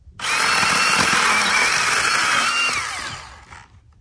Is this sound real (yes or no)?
yes